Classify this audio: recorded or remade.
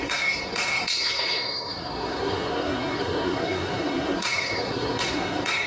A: remade